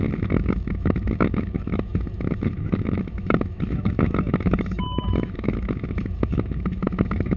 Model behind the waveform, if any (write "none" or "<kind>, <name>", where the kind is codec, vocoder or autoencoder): autoencoder, DAC-VAE